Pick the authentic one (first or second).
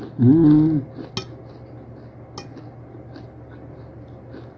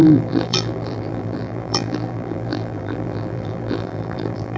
first